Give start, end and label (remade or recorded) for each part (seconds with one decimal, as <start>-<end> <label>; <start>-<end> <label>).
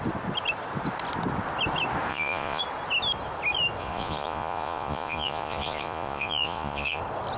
0.0-2.1 recorded; 2.1-2.6 remade; 2.6-3.8 recorded; 3.8-7.0 remade; 7.0-7.4 recorded